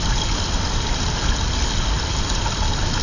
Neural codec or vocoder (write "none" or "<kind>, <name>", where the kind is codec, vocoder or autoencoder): none